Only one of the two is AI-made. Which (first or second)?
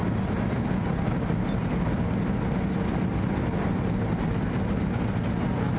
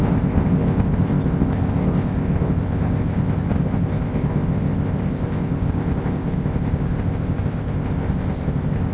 second